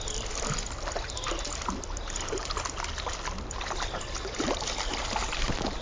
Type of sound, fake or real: real